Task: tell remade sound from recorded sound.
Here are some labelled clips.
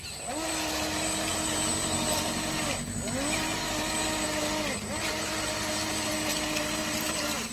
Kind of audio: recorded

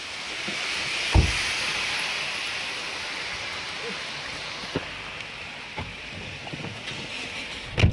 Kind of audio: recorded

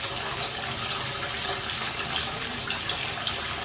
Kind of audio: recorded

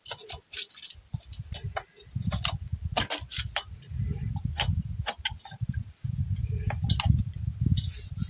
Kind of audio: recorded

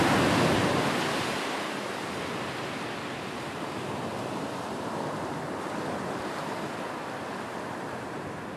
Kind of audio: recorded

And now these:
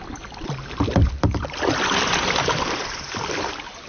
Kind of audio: recorded